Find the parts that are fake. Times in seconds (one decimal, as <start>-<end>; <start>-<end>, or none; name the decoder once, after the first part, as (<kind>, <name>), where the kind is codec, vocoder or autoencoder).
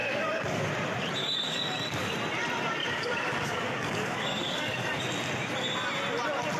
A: 0.0-0.7 (codec, DAC); 1.2-2.1; 2.8-5.0